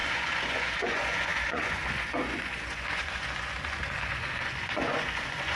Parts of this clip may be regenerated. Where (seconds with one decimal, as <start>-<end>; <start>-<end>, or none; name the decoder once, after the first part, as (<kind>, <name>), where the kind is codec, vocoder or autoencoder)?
0.0-5.6 (vocoder, Vocos)

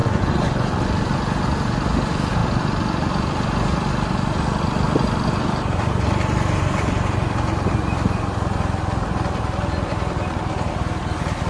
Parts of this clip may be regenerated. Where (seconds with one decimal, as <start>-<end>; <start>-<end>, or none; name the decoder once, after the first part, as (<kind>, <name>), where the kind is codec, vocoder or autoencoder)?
0.0-0.8 (vocoder, Vocos)